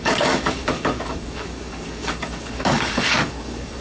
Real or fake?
fake